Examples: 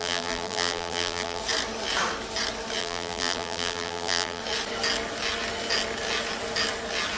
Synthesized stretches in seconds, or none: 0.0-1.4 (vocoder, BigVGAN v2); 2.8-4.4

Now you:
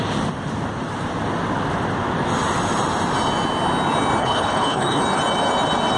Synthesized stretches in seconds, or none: 4.2-5.0 (codec, HILCodec)

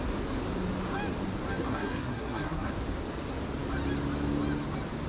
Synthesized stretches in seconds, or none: 1.6-2.7 (codec, SNAC)

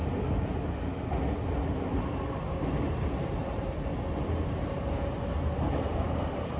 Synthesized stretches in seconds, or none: 3.2-3.7 (vocoder, BigVGAN v2)

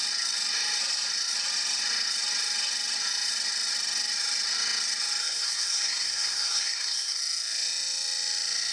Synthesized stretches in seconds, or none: 5.2-7.2 (codec, SNAC)

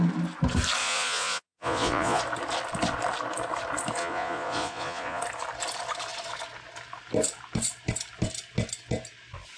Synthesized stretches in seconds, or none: 0.8-2.2 (vocoder, Vocos); 4.0-5.2

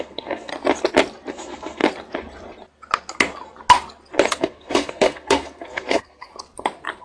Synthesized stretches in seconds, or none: 0.0-0.5 (codec, SNAC); 1.3-1.8; 4.3-6.3

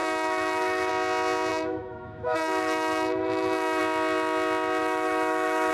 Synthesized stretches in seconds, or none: 0.0-0.9 (autoencoder, DAC-VAE); 1.5-3.8; 4.8-5.7